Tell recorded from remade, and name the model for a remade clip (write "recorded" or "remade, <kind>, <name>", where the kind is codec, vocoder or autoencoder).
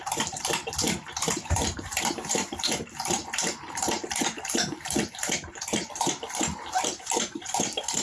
remade, vocoder, BigVGAN v2